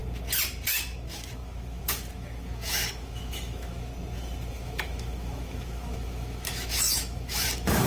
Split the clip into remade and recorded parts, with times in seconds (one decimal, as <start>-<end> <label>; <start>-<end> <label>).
0.0-0.7 recorded; 0.7-3.9 remade; 3.9-4.5 recorded; 4.5-7.9 remade